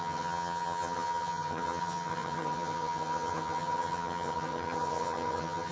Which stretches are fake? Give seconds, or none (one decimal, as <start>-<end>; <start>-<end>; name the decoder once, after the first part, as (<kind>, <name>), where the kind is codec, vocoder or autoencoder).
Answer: 0.0-5.7 (vocoder, HiFi-GAN)